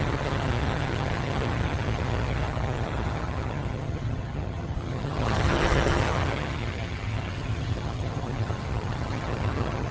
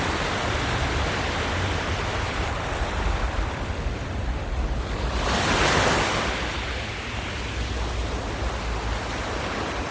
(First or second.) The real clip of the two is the second